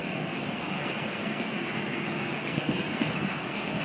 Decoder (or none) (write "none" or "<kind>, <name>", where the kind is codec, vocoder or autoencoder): codec, SNAC